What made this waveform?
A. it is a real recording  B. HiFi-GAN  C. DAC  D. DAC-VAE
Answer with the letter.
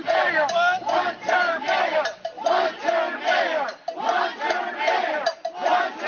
A